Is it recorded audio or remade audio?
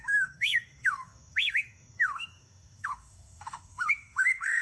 remade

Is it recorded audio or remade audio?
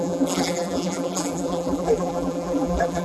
remade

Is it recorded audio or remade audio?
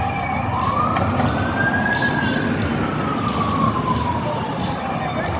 recorded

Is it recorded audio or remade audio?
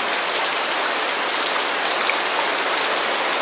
recorded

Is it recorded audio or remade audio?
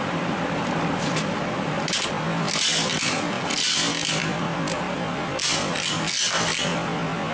recorded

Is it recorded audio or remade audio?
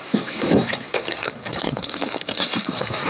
remade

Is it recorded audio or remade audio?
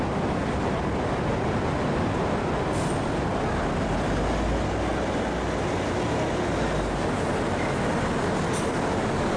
recorded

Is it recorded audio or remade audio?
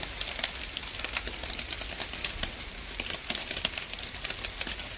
recorded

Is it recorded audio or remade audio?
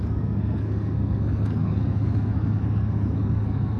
remade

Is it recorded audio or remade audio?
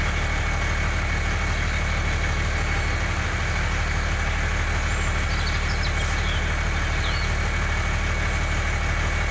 recorded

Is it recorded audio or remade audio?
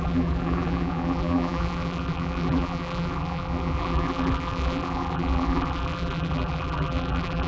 remade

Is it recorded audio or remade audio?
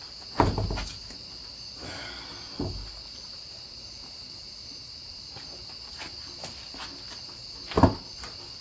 recorded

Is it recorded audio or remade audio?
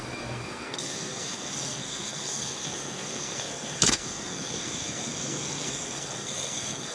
remade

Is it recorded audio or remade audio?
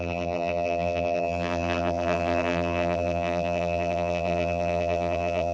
remade